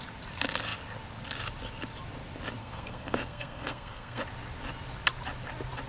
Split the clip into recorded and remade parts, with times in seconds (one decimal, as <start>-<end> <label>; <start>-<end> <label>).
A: 0.0-2.6 recorded; 2.6-4.2 remade; 4.2-5.9 recorded